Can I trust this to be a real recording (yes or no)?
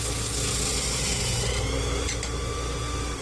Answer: yes